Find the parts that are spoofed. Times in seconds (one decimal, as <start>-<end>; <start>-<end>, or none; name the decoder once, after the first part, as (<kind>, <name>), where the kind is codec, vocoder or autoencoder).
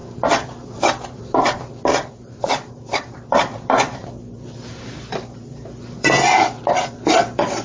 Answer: 0.0-7.6 (vocoder, BigVGAN v2)